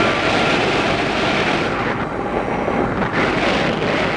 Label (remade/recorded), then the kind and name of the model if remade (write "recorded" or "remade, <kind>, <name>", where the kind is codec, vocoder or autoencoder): recorded